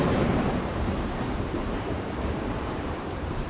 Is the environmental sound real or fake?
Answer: fake